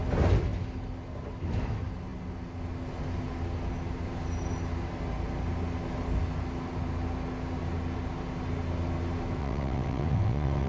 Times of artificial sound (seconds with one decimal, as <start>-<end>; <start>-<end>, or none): 9.4-10.7